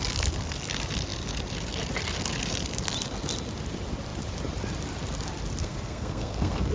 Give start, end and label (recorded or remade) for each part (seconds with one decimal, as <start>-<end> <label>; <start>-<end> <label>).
0.0-5.6 recorded; 5.6-6.7 remade